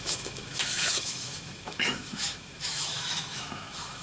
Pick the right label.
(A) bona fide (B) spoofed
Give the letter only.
B